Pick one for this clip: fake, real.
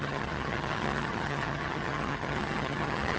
fake